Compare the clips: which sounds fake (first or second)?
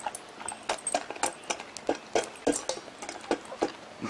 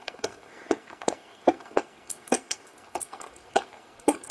second